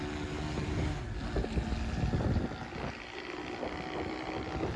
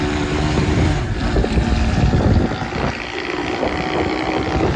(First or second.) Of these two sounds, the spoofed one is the second